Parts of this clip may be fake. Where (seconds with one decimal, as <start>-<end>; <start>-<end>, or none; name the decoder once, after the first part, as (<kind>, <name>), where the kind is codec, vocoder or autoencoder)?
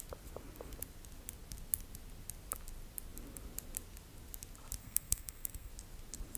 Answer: 4.8-5.7 (codec, SNAC)